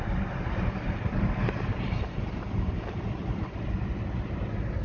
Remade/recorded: recorded